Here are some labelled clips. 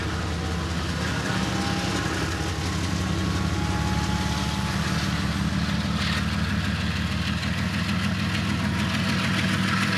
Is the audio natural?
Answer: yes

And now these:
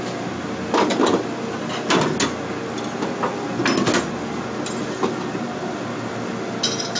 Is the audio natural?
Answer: yes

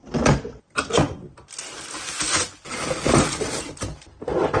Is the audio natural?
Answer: yes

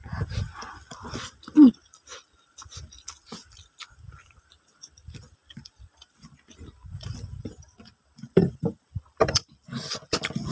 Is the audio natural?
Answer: no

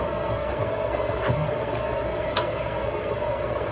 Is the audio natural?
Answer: no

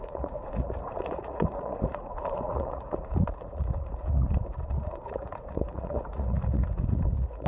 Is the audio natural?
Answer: no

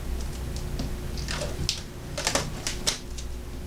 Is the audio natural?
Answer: yes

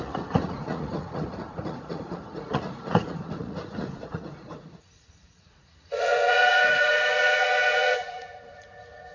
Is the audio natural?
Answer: no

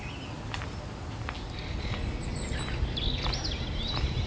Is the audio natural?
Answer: yes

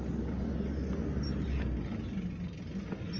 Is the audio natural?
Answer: yes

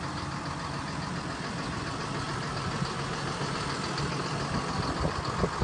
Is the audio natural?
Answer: yes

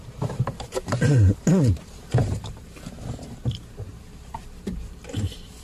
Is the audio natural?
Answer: no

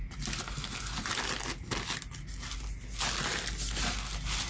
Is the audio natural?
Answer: yes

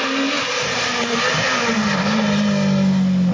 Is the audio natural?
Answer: yes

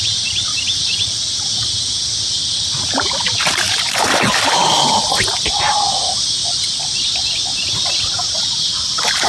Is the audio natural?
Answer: yes